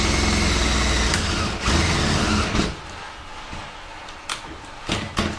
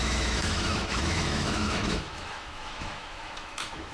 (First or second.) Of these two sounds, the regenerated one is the second